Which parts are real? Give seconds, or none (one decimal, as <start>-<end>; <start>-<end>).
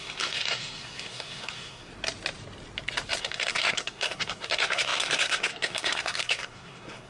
1.9-3.2